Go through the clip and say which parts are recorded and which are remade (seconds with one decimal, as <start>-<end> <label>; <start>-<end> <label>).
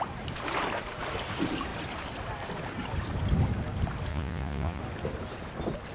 0.0-4.1 recorded; 4.1-4.8 remade; 4.8-5.9 recorded